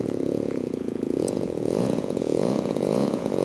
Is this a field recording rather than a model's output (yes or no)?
no